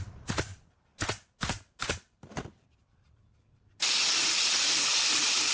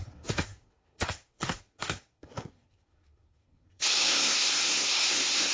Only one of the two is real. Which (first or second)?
first